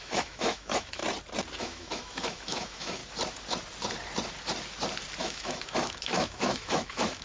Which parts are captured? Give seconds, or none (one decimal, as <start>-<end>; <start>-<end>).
1.0-1.6; 3.0-5.2